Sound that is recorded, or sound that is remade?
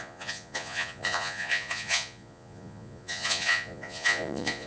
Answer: remade